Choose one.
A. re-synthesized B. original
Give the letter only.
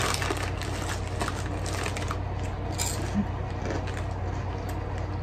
B